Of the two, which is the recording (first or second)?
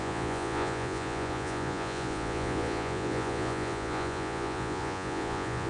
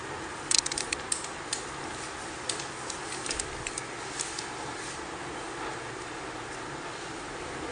second